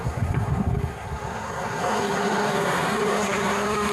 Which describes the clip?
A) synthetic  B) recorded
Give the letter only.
A